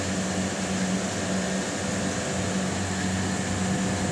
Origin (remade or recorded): recorded